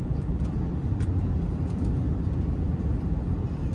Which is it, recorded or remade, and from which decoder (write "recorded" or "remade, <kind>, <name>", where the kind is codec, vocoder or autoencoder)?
remade, vocoder, BigVGAN v2